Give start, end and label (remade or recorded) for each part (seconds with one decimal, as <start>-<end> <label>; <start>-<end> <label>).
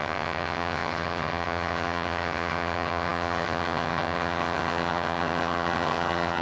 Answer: 0.0-6.4 remade